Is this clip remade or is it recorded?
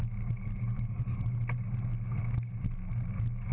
recorded